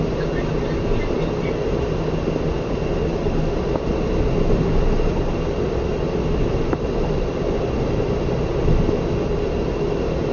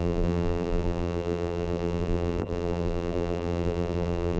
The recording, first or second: first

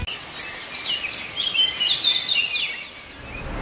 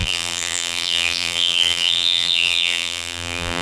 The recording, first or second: first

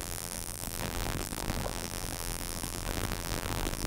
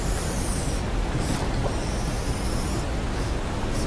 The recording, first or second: second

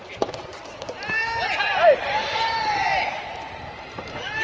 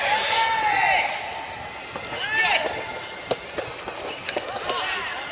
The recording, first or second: second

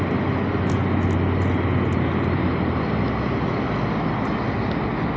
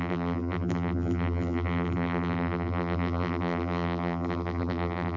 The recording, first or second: first